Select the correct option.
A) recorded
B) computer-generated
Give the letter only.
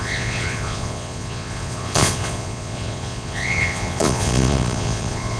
B